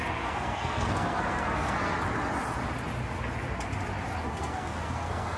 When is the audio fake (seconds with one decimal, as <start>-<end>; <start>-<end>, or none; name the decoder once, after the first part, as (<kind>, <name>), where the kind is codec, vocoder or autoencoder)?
0.0-1.9 (codec, SNAC); 4.2-5.4

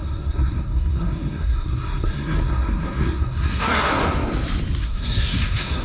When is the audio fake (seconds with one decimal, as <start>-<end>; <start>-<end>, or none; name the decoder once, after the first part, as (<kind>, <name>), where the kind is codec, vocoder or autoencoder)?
0.0-3.9 (codec, SNAC); 4.8-5.8